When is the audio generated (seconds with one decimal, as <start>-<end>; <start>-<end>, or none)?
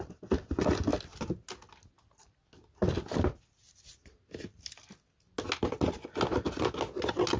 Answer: none